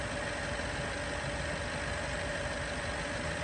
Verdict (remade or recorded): recorded